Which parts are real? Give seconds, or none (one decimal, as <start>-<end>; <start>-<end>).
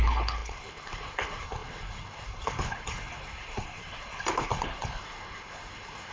none